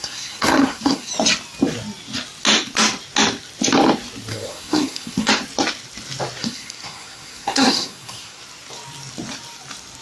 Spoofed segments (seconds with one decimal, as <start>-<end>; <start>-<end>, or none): 0.0-1.1; 4.3-5.3; 6.4-8.4